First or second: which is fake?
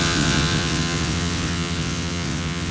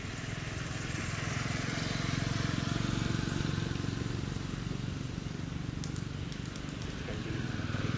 first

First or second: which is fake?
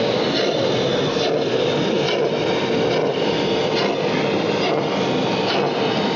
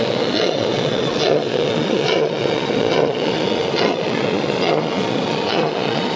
second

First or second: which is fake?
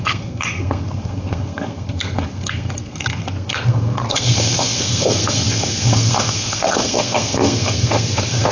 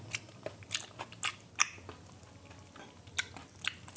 first